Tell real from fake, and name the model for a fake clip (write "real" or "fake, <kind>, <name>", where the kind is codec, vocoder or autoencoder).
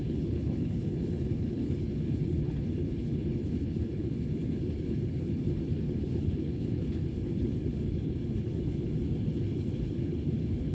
fake, codec, HILCodec